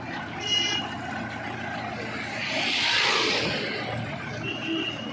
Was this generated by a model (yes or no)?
no